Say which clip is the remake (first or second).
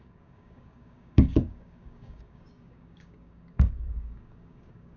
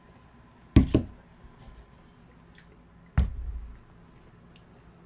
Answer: first